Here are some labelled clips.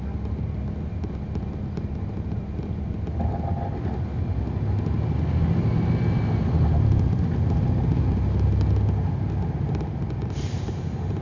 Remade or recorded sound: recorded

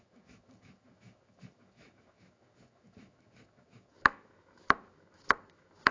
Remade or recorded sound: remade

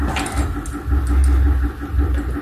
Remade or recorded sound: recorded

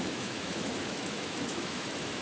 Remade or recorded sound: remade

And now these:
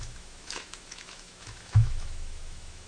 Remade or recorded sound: remade